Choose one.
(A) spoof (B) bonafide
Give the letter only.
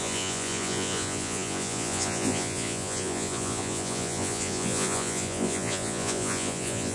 A